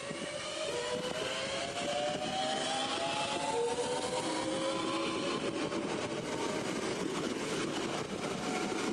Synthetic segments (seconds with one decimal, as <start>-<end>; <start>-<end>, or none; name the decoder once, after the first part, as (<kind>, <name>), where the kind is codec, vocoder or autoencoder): 6.9-7.8 (codec, HILCodec)